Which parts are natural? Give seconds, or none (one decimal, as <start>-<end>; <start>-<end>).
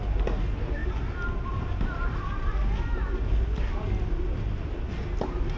0.0-5.6